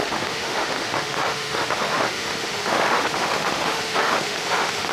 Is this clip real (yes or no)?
no